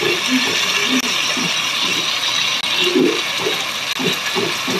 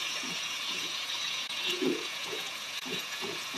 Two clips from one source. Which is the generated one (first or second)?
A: second